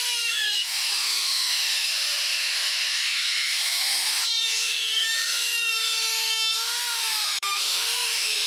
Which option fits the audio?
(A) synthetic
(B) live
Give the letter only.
A